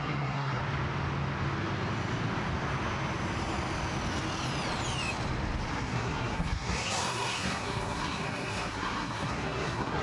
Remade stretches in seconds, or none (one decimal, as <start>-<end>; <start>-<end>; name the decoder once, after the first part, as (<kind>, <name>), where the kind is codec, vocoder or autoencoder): 0.0-0.6 (codec, SNAC); 5.7-10.0

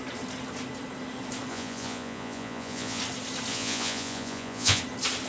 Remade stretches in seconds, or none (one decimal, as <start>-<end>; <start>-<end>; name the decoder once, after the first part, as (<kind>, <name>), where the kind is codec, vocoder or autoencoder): 1.5-3.0 (vocoder, Vocos); 3.5-4.8

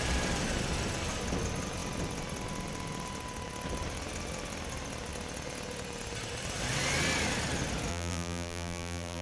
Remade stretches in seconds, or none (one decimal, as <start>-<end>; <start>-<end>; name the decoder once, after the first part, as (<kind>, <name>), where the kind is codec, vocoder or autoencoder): 7.9-9.2 (vocoder, BigVGAN v2)

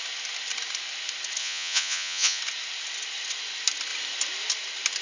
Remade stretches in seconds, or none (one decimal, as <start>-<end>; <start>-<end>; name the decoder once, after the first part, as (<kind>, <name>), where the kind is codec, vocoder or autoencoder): 1.4-2.4 (vocoder, Vocos)

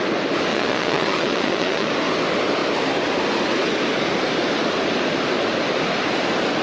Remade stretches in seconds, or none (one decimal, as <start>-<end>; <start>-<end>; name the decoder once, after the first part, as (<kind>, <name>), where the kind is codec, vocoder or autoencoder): 0.5-1.9 (vocoder, Vocos)

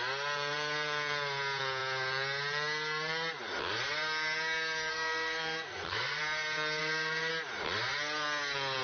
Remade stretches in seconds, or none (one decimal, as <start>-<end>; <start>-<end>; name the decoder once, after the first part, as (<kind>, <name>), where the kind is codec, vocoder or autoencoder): 4.9-6.2 (codec, SNAC); 6.8-7.3

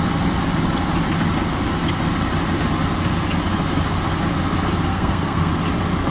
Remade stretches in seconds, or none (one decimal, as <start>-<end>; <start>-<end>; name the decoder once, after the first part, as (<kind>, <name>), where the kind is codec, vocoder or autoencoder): 4.9-5.5 (codec, SNAC)

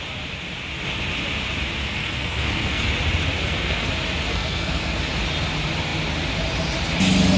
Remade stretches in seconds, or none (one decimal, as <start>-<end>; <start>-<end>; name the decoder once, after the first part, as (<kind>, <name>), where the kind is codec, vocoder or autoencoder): 1.8-2.9 (codec, SNAC); 3.4-3.9; 4.3-5.0